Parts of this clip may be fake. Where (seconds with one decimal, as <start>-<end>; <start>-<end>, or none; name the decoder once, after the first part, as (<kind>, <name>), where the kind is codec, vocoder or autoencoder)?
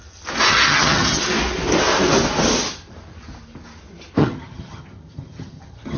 0.5-1.2 (vocoder, HiFi-GAN); 4.2-6.0